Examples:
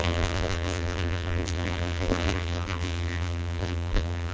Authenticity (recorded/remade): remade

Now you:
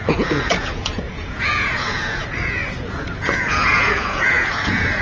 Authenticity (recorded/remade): remade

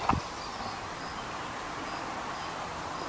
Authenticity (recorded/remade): recorded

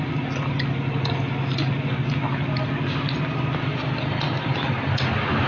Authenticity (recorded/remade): recorded